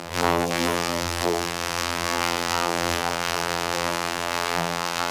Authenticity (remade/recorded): remade